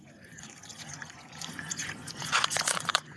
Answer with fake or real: fake